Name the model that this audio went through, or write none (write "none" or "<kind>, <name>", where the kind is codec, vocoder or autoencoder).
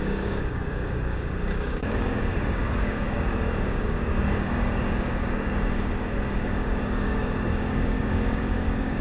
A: codec, DAC